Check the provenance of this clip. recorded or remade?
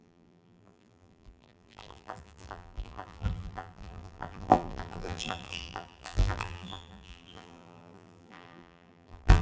remade